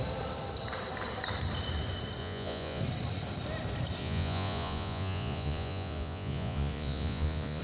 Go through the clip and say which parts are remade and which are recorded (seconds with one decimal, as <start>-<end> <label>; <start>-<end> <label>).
0.0-2.2 recorded; 2.2-2.8 remade; 2.8-4.0 recorded; 4.0-7.6 remade